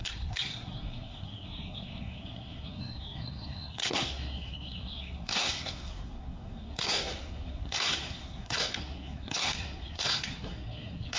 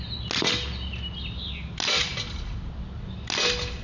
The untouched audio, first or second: second